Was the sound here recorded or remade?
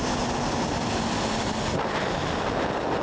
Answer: recorded